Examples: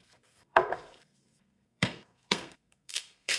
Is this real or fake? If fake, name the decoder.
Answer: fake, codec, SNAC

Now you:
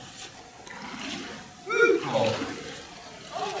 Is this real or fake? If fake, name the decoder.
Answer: real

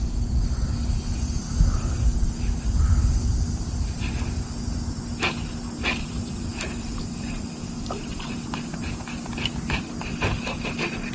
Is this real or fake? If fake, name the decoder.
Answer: real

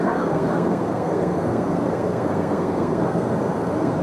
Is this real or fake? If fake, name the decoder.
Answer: fake, codec, SNAC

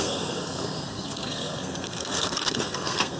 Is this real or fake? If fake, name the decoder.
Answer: fake, codec, SNAC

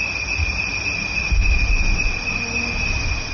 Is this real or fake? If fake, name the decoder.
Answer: real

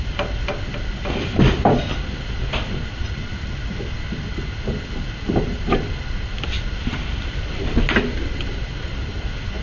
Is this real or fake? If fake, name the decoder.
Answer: real